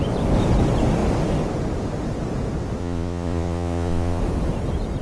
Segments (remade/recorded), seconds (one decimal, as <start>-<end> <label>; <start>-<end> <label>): 0.0-2.8 recorded; 2.8-4.2 remade; 4.2-5.0 recorded